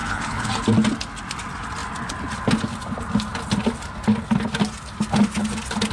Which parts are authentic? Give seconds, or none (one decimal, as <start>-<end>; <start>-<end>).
0.5-5.9